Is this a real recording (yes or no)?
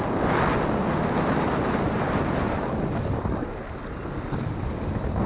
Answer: yes